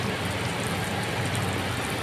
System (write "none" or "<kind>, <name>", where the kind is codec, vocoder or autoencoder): none